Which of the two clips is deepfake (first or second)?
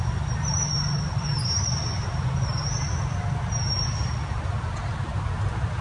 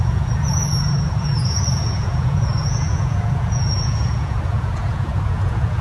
second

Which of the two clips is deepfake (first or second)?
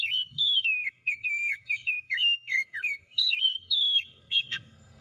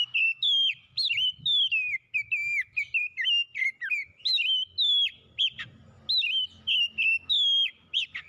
first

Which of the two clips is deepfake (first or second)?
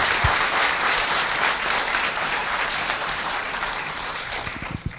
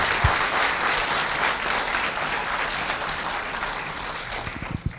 first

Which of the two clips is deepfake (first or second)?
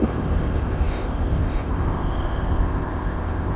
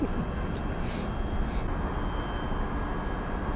first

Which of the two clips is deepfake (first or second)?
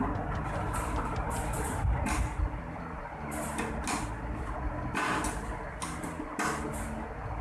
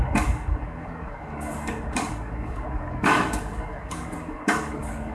second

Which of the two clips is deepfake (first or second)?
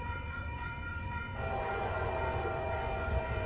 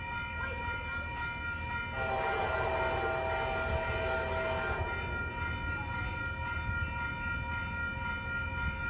first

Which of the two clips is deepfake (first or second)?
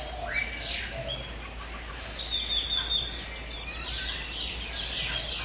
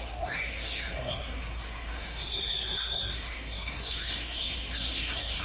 second